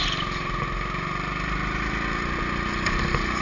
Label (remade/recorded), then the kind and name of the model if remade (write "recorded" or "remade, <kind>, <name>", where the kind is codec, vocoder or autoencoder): recorded